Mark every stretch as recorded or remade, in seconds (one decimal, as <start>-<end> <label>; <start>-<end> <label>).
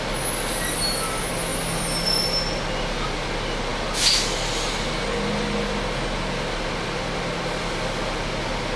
0.0-8.8 recorded